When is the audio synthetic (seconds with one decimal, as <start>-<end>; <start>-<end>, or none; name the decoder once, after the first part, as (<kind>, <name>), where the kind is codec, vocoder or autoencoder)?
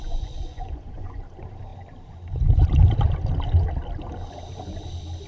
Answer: 0.0-1.2 (vocoder, Vocos)